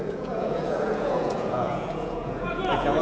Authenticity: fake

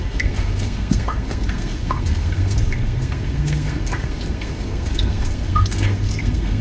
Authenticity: fake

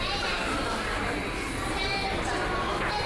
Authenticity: real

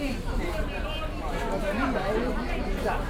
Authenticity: fake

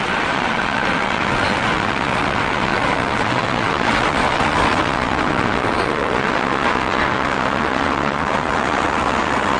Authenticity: fake